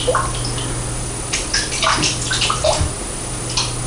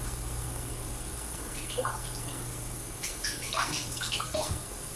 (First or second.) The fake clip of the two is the second